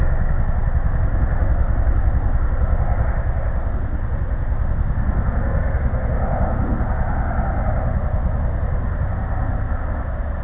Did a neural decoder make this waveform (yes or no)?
no